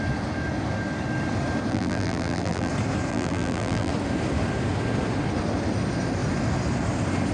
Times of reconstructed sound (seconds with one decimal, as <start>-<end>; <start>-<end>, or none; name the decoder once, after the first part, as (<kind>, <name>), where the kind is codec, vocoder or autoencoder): 1.7-2.7 (vocoder, BigVGAN v2); 3.1-3.9